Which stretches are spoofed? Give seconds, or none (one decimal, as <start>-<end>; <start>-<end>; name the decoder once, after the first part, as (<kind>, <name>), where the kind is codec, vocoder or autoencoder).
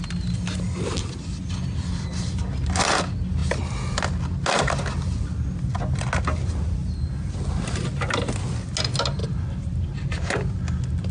9.2-10.6 (vocoder, BigVGAN v2)